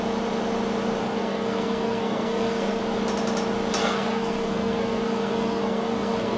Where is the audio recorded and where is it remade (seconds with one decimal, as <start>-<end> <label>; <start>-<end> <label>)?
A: 0.0-1.0 recorded; 1.0-2.8 remade; 2.8-3.8 recorded; 3.8-6.4 remade